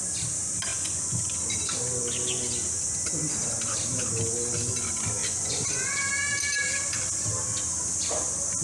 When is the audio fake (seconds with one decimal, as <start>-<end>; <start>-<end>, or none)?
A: 0.7-1.4; 5.2-6.1